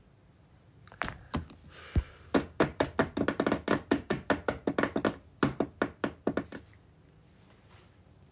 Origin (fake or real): real